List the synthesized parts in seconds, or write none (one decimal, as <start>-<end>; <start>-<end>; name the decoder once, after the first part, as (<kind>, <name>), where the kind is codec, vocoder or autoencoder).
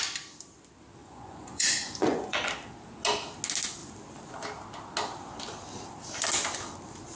1.0-2.5 (vocoder, Vocos)